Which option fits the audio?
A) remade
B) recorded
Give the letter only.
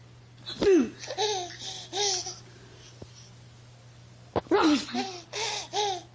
B